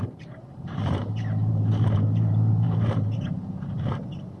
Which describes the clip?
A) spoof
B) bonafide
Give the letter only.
A